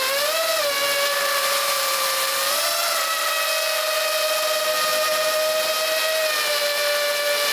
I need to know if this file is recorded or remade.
recorded